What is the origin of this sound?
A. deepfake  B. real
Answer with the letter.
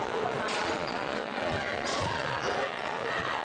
A